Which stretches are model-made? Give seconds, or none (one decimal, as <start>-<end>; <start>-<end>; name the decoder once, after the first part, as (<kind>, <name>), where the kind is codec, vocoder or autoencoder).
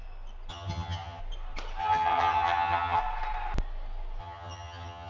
0.5-1.2 (vocoder, HiFi-GAN); 1.8-3.0; 4.2-5.1